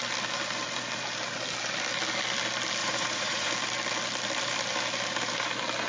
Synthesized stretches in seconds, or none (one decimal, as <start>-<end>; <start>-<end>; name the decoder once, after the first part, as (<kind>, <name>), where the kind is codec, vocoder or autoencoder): 2.8-3.5 (vocoder, Vocos)